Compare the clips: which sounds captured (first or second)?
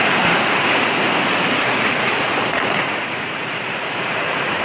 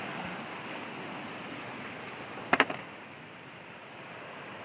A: second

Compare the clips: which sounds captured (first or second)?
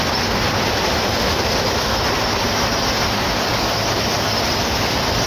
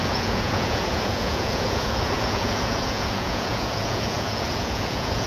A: first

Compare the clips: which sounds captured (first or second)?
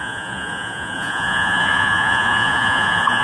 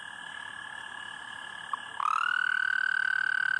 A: second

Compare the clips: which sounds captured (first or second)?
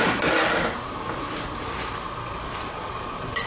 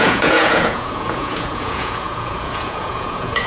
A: first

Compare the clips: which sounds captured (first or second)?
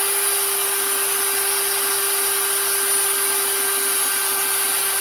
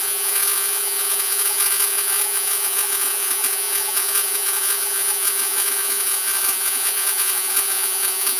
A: first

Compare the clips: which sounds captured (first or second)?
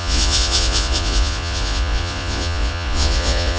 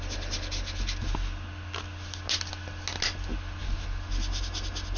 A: second